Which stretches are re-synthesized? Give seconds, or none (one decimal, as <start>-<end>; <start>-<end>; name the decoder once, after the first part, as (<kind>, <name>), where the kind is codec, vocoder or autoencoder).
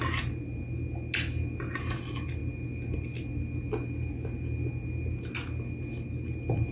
none